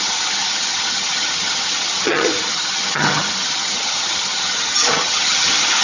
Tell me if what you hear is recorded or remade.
remade